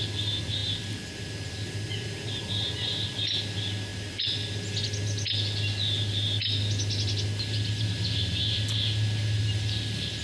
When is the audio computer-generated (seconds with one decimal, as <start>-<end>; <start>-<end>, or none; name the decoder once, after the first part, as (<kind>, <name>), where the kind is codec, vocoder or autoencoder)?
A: none